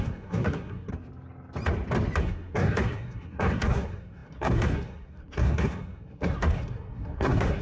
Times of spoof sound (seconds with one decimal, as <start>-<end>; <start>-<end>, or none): 0.0-0.9; 2.2-7.6